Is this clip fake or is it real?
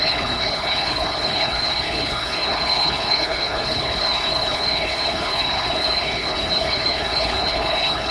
fake